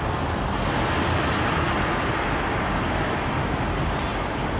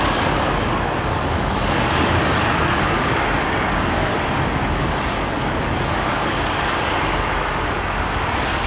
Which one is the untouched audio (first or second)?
first